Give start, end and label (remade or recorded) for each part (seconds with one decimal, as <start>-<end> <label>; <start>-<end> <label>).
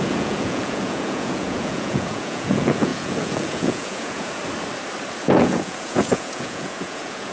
0.0-4.4 remade; 4.4-5.2 recorded; 5.2-7.3 remade